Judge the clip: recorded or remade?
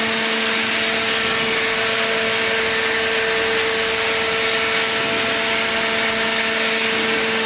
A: recorded